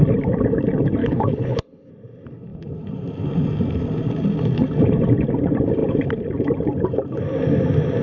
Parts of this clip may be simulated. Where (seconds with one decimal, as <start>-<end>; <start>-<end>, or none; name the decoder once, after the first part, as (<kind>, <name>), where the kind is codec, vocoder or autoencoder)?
1.0-1.9 (codec, HILCodec)